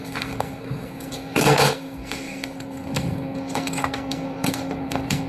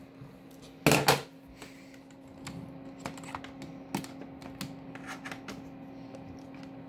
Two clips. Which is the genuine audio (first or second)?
second